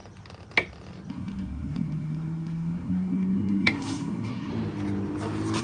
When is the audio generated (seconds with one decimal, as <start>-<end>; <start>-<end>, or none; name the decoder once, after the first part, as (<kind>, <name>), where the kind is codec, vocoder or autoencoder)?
1.1-4.5 (codec, SNAC)

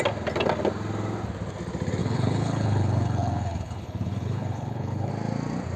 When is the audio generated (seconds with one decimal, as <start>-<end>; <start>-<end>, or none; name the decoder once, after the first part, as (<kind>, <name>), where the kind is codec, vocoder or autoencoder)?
2.0-5.1 (codec, HILCodec)

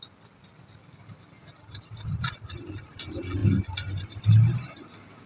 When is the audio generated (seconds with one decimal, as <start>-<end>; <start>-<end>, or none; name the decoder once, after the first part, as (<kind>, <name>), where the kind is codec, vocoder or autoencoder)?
none

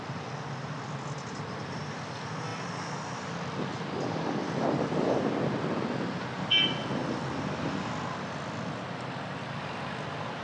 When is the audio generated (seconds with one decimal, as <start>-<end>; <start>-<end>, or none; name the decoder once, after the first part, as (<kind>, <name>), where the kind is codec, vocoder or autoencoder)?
none

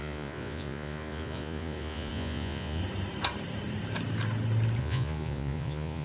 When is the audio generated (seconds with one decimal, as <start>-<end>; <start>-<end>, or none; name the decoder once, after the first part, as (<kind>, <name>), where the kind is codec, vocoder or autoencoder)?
0.0-2.8 (vocoder, Vocos); 4.8-6.0

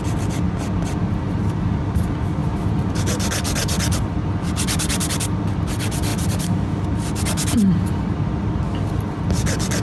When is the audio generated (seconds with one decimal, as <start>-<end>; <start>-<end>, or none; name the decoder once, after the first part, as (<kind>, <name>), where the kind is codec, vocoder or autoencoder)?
2.4-3.0 (vocoder, BigVGAN v2)